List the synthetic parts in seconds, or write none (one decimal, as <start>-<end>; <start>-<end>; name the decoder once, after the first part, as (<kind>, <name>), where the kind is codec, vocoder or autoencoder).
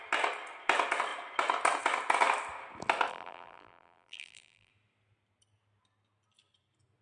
3.1-4.7 (vocoder, BigVGAN v2)